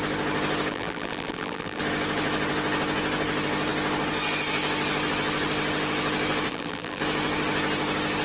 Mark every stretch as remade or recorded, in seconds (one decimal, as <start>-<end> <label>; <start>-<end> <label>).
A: 0.0-0.7 recorded; 0.7-1.8 remade; 1.8-6.5 recorded; 6.5-7.0 remade; 7.0-8.2 recorded